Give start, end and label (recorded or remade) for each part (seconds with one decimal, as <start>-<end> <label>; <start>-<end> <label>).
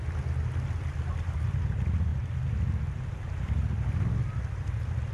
0.0-5.1 recorded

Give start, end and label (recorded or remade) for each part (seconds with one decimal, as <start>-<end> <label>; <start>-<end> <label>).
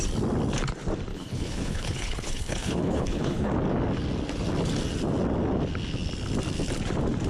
0.0-1.1 recorded; 1.1-3.5 remade; 3.5-7.3 recorded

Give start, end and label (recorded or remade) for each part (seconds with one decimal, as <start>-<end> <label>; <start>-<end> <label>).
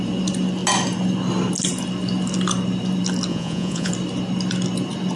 0.0-3.3 recorded; 3.3-3.9 remade; 3.9-5.2 recorded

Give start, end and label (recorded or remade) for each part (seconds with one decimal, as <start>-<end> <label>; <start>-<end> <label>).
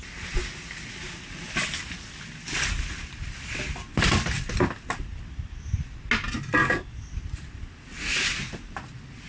0.0-6.6 recorded; 6.6-7.1 remade; 7.1-9.3 recorded